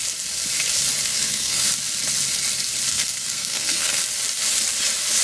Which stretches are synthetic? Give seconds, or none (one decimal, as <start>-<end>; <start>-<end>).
1.1-1.7; 2.9-4.0